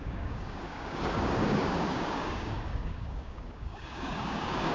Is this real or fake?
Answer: fake